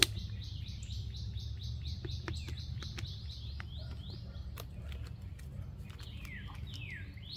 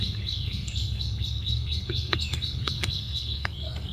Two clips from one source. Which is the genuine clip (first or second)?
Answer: first